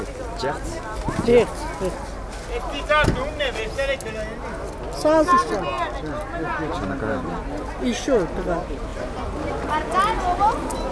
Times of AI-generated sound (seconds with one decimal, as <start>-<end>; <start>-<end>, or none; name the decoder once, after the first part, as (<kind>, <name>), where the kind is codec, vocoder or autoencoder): none